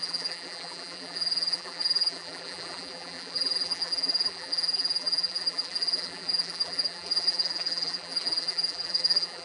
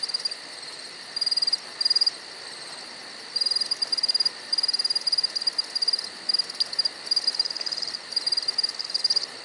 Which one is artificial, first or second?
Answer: first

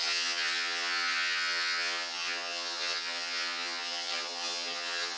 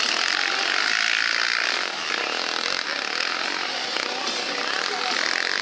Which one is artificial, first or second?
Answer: first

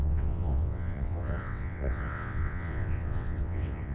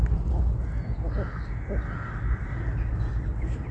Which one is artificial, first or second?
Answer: first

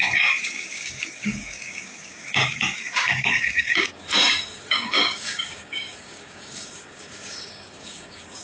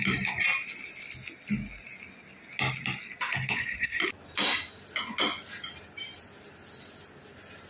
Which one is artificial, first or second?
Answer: first